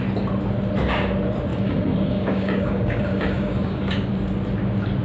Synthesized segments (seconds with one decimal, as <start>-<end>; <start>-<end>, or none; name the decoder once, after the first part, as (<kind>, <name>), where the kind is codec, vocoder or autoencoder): 1.5-4.1 (codec, DAC)